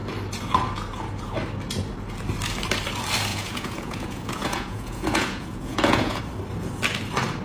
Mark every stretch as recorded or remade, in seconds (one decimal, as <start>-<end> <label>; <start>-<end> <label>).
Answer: 0.0-3.3 recorded; 3.3-6.2 remade; 6.2-7.4 recorded